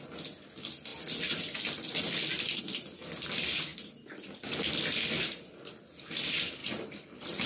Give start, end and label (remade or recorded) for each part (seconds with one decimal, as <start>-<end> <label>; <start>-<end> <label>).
0.0-7.5 recorded